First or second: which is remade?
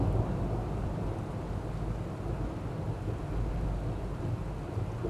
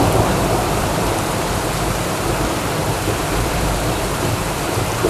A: second